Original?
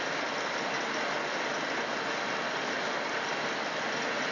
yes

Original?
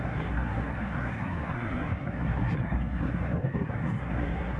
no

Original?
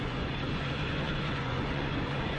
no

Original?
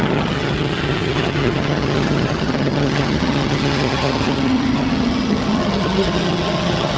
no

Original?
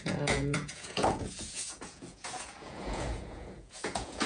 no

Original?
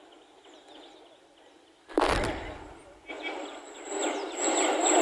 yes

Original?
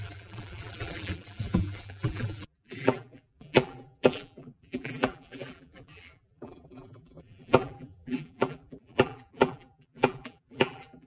no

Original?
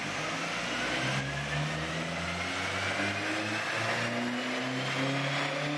yes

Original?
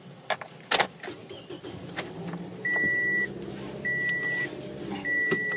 yes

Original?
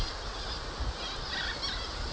yes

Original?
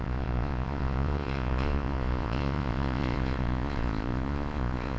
no